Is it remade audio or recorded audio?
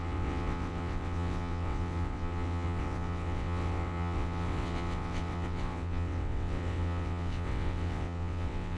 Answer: remade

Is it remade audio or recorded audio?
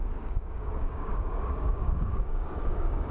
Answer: remade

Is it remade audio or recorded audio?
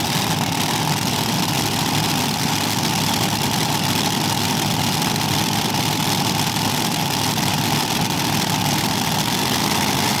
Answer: recorded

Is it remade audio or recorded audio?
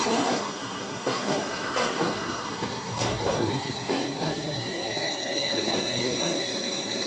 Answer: remade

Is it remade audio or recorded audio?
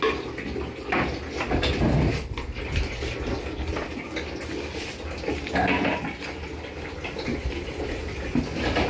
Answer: recorded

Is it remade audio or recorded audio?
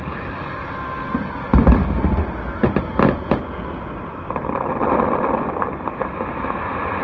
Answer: recorded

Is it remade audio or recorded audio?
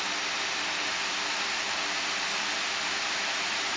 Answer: recorded